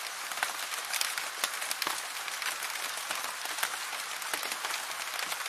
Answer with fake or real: real